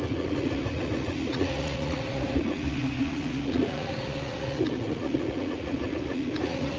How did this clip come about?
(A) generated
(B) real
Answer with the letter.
A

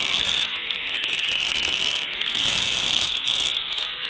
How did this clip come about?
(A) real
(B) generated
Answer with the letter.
B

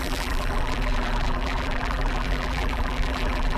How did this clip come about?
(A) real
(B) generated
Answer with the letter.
B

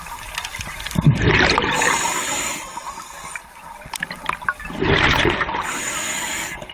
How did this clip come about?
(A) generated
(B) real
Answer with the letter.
B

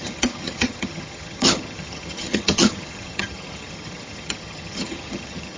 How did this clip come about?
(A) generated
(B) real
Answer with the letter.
A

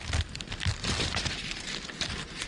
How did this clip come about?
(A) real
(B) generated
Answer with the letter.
B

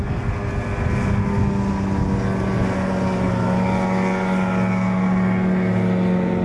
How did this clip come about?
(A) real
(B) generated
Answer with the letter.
A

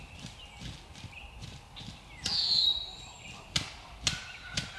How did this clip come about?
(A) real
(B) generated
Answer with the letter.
A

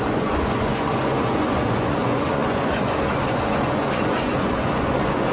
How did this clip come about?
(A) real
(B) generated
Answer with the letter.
B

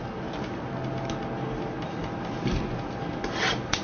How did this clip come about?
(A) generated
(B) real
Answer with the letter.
B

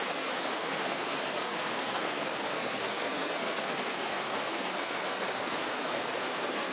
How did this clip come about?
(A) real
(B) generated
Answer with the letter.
B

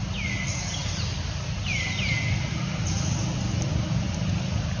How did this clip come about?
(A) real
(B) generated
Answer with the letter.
A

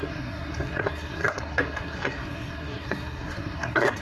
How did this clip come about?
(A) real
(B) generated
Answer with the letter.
B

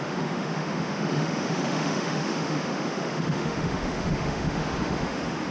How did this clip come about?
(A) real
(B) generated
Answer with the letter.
B